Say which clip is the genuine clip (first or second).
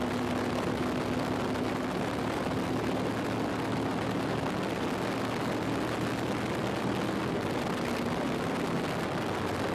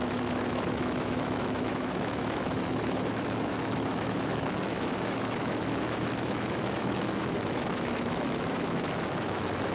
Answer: first